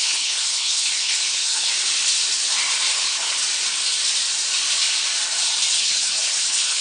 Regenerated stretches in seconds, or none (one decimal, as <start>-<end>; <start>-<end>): 0.0-1.7; 2.9-3.4; 5.8-6.8